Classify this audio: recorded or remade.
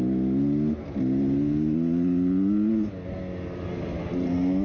recorded